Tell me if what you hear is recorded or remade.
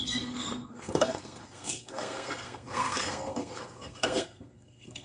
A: remade